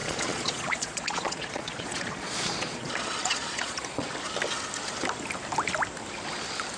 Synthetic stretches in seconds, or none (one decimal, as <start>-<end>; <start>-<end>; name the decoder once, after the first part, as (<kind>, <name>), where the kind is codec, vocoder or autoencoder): 0.0-4.1 (vocoder, Vocos)